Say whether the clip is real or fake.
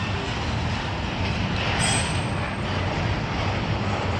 real